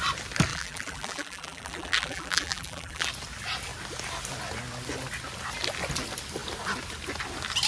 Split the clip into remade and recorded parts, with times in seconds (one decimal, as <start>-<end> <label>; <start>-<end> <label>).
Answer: 0.0-0.5 recorded; 0.5-3.1 remade; 3.1-7.7 recorded